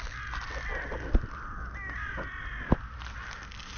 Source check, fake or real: real